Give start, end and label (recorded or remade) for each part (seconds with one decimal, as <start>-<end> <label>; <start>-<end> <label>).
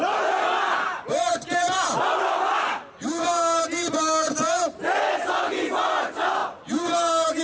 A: 0.0-7.4 recorded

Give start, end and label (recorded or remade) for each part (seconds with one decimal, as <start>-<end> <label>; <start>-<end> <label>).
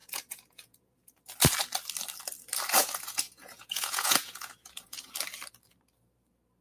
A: 0.0-1.2 remade; 1.2-2.8 recorded; 2.8-5.1 remade; 5.1-6.6 recorded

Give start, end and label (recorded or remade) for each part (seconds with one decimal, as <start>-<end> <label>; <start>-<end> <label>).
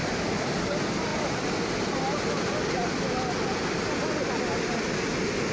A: 0.0-5.5 recorded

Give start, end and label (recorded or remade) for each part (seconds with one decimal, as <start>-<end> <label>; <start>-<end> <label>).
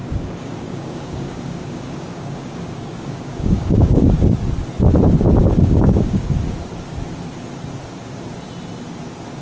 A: 0.0-4.0 remade; 4.0-5.4 recorded; 5.4-6.3 remade; 6.3-9.4 recorded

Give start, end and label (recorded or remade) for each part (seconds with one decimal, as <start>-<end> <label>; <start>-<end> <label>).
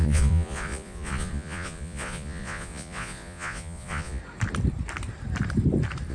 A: 0.0-4.2 remade; 4.2-6.1 recorded